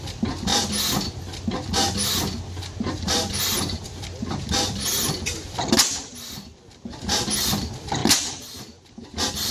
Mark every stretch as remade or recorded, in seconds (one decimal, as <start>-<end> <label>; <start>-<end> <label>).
0.0-9.5 recorded